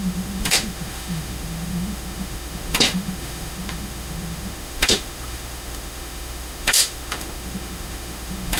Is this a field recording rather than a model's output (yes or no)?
no